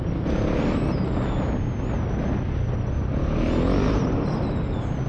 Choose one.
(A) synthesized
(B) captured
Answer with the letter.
B